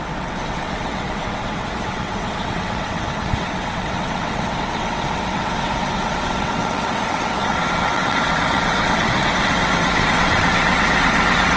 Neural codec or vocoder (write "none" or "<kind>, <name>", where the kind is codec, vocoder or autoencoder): vocoder, WaveNeXt